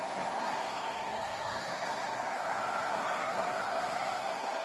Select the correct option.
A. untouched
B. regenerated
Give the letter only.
B